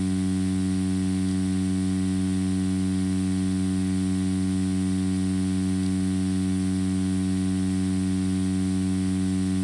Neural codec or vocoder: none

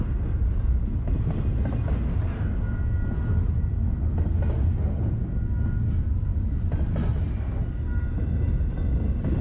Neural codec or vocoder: none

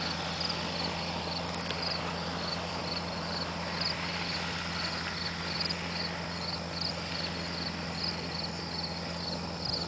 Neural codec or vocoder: none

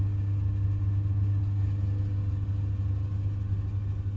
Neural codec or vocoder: none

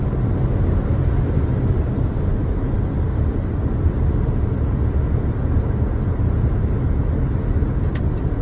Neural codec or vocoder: none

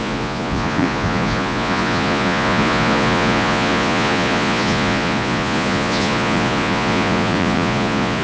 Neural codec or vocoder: vocoder, Vocos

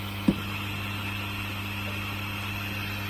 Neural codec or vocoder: none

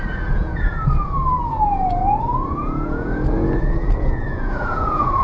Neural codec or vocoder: vocoder, Vocos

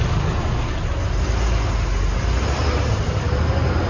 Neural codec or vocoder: none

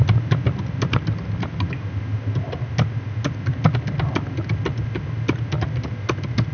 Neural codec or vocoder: none